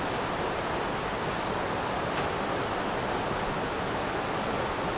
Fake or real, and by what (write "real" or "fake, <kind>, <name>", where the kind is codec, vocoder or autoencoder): real